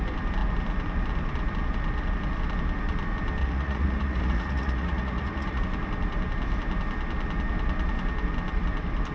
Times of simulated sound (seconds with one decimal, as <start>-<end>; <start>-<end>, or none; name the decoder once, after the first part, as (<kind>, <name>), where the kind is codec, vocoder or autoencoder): 3.4-5.6 (vocoder, Vocos)